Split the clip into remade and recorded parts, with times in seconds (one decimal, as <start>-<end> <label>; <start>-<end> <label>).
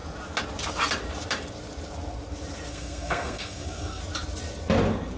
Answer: 0.0-2.7 recorded; 2.7-4.0 remade; 4.0-5.2 recorded